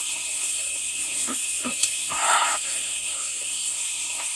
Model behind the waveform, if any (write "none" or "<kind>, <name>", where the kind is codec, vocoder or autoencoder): codec, SNAC